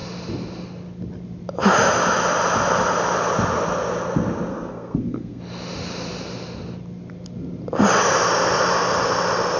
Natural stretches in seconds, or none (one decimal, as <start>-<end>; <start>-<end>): 0.0-4.5; 5.4-9.6